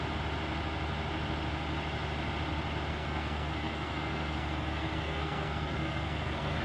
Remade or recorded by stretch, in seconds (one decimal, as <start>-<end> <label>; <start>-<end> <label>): 0.0-2.9 recorded; 2.9-6.6 remade